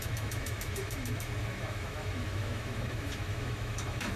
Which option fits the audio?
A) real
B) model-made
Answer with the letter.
B